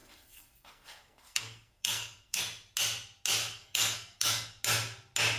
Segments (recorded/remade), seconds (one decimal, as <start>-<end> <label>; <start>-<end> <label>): 0.0-2.4 remade; 2.4-3.4 recorded; 3.4-4.6 remade; 4.6-5.4 recorded